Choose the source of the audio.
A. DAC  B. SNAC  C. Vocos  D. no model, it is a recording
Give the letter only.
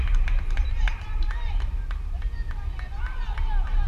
D